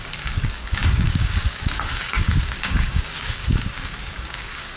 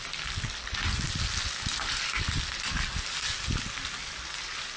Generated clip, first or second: first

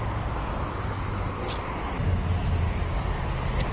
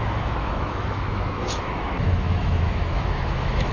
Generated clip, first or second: second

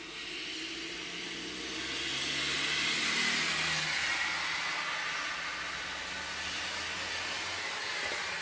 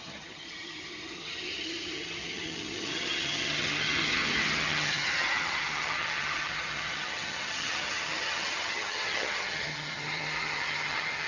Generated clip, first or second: second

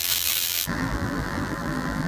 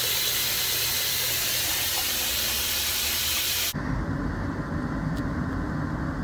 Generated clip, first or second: first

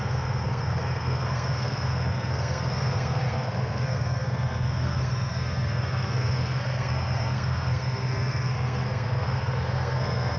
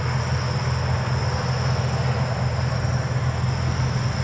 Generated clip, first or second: first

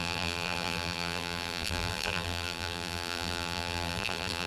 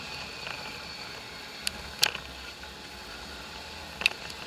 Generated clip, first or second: first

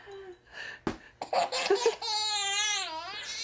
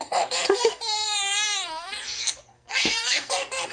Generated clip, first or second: second